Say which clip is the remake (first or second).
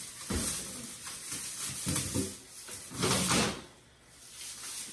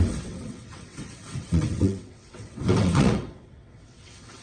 second